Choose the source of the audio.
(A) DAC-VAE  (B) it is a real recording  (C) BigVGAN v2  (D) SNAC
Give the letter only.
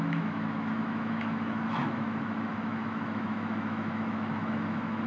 A